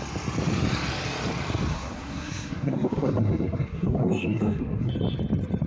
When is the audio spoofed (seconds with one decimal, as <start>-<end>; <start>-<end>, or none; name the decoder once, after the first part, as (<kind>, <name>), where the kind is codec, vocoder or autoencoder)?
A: 1.7-4.9 (codec, SNAC)